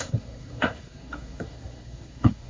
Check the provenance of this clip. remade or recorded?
remade